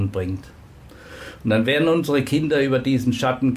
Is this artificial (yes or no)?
no